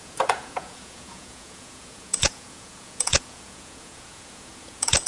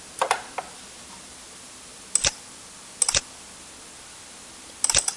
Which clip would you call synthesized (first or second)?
first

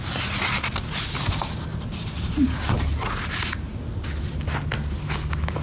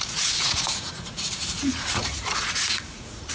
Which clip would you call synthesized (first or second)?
second